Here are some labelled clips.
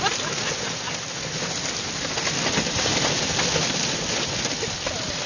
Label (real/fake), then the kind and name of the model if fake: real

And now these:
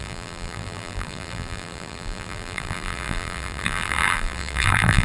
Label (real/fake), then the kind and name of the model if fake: fake, vocoder, BigVGAN v2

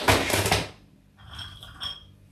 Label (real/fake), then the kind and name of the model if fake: fake, vocoder, BigVGAN v2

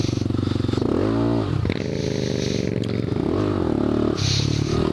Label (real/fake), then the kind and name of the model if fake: real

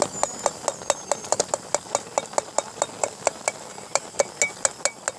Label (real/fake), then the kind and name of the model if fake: real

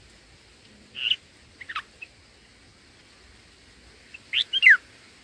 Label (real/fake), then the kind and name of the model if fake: real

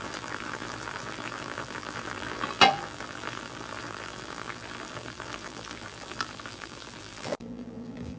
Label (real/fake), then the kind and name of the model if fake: fake, vocoder, BigVGAN v2